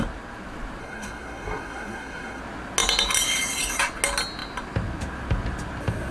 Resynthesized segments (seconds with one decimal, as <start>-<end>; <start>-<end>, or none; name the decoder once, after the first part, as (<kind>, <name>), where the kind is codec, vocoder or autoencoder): 0.8-2.4 (codec, SNAC)